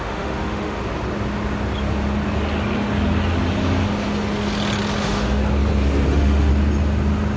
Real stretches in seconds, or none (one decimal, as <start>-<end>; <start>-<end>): 0.8-5.0; 5.4-6.1; 6.5-7.4